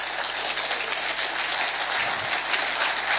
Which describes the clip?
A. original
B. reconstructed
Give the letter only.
A